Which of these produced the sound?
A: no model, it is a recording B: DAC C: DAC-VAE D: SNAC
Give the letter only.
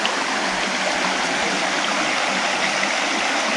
A